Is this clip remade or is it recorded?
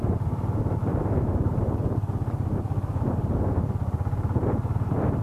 recorded